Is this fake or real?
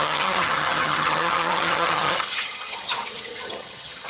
fake